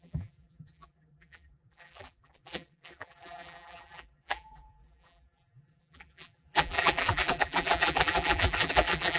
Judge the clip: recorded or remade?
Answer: remade